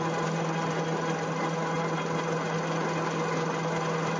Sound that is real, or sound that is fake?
real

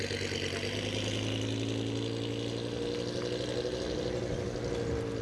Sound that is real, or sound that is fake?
real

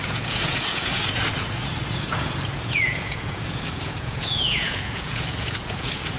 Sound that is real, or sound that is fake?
fake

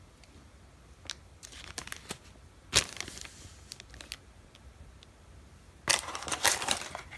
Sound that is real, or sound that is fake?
real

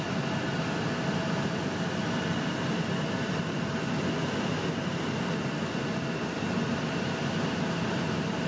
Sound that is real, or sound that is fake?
real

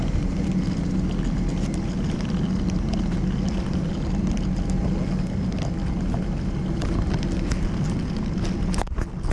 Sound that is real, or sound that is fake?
real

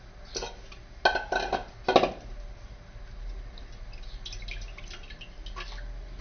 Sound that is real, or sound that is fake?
real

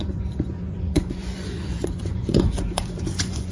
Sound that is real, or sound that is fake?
fake